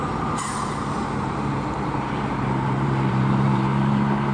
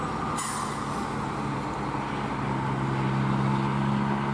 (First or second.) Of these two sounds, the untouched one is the second